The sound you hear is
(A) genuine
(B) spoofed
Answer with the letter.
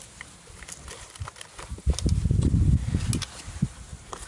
A